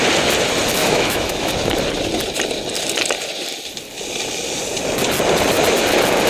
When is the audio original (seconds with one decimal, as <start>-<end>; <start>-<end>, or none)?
0.0-0.8; 1.5-6.3